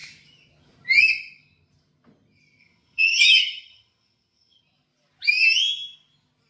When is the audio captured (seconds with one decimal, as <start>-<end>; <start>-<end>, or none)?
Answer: 0.0-2.6; 4.6-6.5